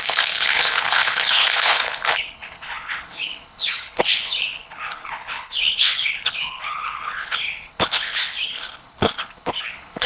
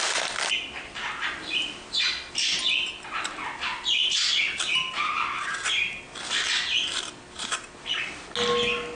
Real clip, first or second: second